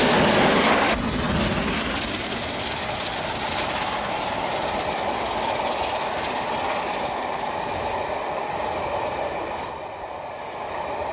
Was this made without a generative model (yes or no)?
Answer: yes